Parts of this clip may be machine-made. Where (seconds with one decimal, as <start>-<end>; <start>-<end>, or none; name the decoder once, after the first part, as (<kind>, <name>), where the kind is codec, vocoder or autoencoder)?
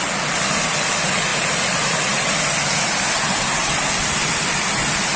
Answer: none